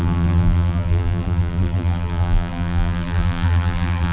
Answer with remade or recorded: remade